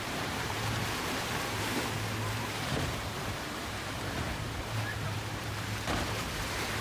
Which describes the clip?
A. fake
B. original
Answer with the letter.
A